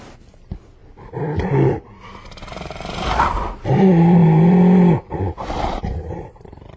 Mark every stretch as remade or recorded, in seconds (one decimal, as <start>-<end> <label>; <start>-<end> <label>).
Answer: 0.0-6.8 recorded